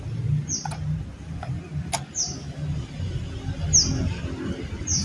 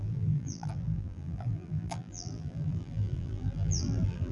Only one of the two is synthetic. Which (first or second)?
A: second